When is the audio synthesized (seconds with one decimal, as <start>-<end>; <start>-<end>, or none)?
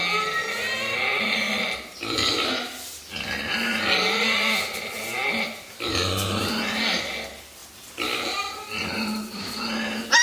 none